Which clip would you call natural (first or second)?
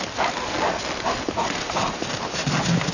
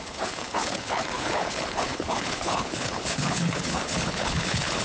first